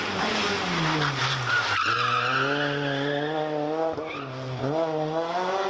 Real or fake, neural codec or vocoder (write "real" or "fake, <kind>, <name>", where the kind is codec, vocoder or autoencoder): real